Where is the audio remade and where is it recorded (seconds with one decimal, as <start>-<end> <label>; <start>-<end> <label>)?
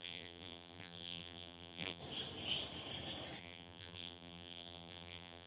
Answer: 0.0-2.0 remade; 2.0-3.4 recorded; 3.4-5.5 remade